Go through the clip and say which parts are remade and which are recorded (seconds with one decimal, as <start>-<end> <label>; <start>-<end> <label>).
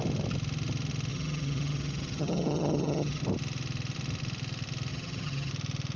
0.0-1.1 recorded; 1.1-3.2 remade; 3.2-4.9 recorded; 4.9-5.5 remade; 5.5-6.0 recorded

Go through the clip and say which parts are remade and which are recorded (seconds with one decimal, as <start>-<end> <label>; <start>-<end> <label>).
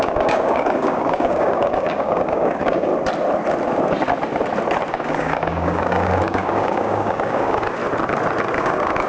0.0-2.9 remade; 2.9-4.9 recorded; 4.9-7.8 remade; 7.8-8.6 recorded; 8.6-9.1 remade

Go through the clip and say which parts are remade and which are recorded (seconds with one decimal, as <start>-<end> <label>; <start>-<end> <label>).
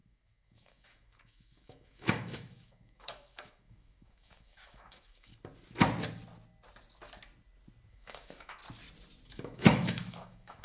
0.0-5.3 remade; 5.3-7.9 recorded; 7.9-8.6 remade; 8.6-9.3 recorded; 9.3-10.6 remade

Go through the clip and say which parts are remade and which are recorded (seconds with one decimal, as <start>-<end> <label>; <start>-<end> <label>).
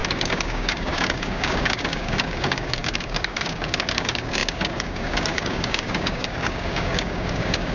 0.0-7.7 remade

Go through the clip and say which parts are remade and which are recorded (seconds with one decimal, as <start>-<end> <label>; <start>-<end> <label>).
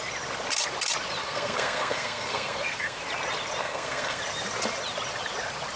0.0-1.2 recorded; 1.2-3.0 remade; 3.0-3.6 recorded; 3.6-4.2 remade; 4.2-5.8 recorded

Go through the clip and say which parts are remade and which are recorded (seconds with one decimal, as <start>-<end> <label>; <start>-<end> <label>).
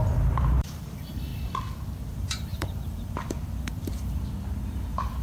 0.0-1.3 remade; 1.3-2.0 recorded; 2.0-5.2 remade